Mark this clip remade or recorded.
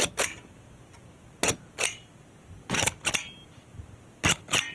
recorded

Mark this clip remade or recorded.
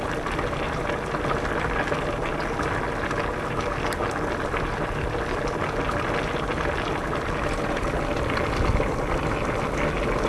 recorded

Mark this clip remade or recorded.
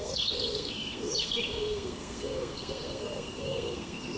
remade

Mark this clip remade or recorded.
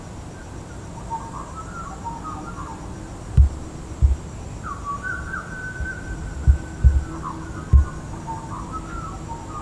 recorded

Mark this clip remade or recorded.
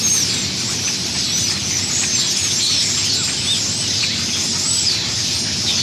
recorded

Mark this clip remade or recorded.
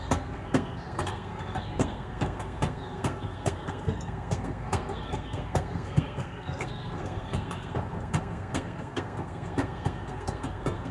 remade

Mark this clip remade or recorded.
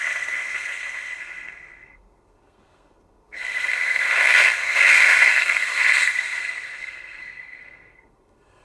remade